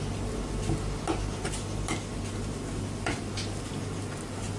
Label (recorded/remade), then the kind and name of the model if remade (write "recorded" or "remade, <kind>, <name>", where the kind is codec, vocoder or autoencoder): recorded